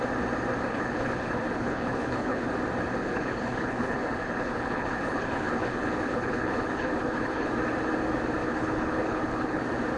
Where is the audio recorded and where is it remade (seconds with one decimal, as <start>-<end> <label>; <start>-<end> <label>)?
0.0-0.7 recorded; 0.7-2.5 remade; 2.5-3.0 recorded; 3.0-7.5 remade; 7.5-8.4 recorded; 8.4-9.6 remade; 9.6-10.0 recorded